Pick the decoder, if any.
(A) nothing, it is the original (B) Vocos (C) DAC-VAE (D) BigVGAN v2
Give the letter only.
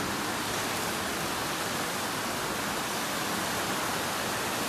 A